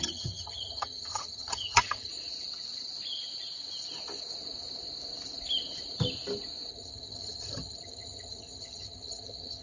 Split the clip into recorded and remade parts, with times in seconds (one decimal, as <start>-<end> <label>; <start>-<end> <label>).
0.0-2.1 remade; 2.1-6.7 recorded; 6.7-9.6 remade